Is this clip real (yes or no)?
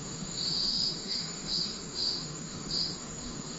no